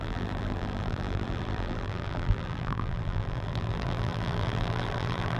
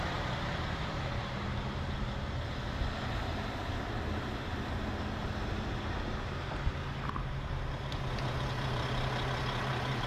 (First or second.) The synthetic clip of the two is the first